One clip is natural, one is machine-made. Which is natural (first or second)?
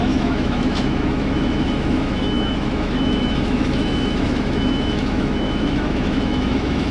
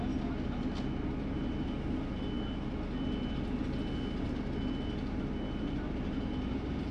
second